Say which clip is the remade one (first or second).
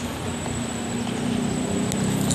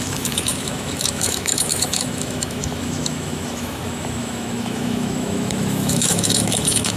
second